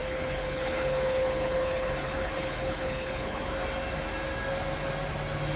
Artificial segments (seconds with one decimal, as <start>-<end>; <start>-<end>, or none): 0.0-3.4